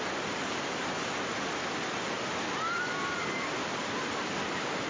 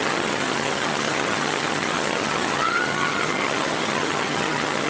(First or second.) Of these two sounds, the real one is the first